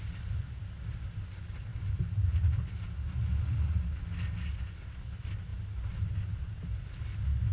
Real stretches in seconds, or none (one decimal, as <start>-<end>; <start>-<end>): 0.0-7.5